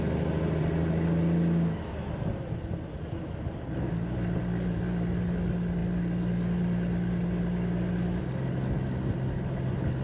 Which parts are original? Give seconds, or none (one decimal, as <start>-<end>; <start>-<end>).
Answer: 0.0-10.0